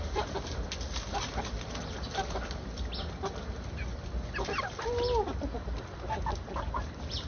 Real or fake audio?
real